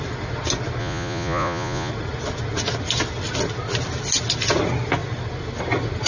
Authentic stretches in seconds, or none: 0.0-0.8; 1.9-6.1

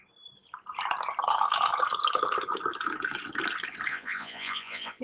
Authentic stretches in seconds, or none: 0.0-3.9